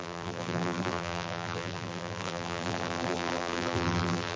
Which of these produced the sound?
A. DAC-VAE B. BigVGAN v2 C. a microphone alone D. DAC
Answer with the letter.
B